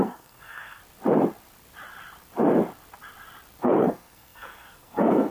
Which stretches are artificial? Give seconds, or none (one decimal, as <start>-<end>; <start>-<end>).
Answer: 0.0-0.8; 3.6-5.3